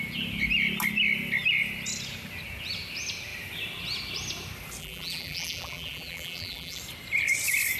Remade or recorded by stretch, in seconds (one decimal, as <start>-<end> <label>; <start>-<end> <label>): 0.0-4.8 recorded; 4.8-6.8 remade; 6.8-7.8 recorded